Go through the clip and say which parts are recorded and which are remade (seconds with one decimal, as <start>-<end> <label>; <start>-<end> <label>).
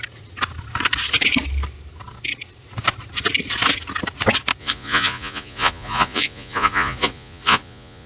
0.0-4.6 recorded; 4.6-8.1 remade